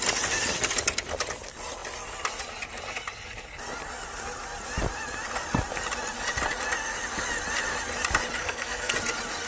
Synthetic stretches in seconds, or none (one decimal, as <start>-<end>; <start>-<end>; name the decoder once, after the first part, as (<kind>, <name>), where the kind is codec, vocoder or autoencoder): 8.4-8.9 (codec, SNAC)

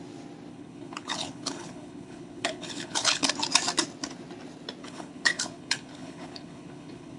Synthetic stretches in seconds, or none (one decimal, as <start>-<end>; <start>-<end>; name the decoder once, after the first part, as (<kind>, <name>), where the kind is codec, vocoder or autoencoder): 0.5-3.3 (codec, HILCodec); 4.8-7.2

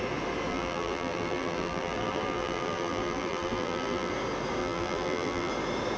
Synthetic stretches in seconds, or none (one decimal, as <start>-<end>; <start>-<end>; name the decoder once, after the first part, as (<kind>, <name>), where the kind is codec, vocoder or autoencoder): 0.5-4.1 (vocoder, BigVGAN v2); 4.6-5.5

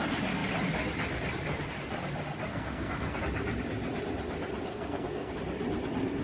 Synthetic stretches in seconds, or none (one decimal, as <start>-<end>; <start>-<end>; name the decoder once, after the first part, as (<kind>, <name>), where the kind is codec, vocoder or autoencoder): 2.5-3.2 (codec, SNAC); 4.7-5.3

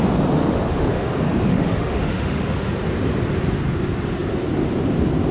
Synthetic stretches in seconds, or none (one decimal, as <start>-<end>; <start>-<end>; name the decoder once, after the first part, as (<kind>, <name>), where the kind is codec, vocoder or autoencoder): 0.4-1.1 (autoencoder, DAC-VAE); 1.5-2.7

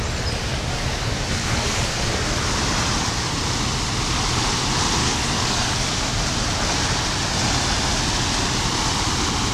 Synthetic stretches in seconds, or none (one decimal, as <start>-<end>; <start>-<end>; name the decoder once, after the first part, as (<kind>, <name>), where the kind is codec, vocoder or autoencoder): 0.5-2.1 (codec, DAC); 5.0-6.1

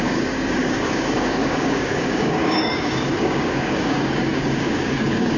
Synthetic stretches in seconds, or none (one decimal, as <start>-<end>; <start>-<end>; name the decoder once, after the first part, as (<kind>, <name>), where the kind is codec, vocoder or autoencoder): 0.0-5.4 (codec, DAC)